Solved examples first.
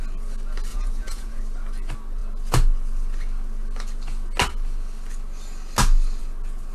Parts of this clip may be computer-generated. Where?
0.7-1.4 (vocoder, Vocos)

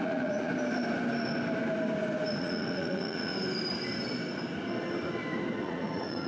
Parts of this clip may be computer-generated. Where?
0.0-0.5 (vocoder, Vocos); 2.4-3.3; 5.6-6.3

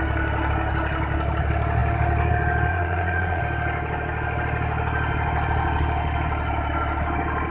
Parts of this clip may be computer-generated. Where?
2.7-3.4 (vocoder, Vocos)

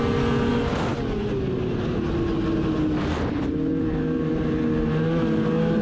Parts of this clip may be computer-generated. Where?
none

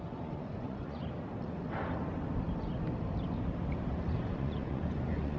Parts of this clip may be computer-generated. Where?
0.0-1.0 (vocoder, Vocos); 4.2-5.4

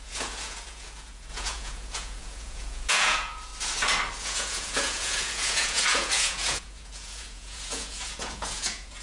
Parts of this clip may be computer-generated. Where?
0.0-3.5 (vocoder, Vocos); 4.2-9.0